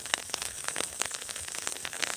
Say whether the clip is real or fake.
fake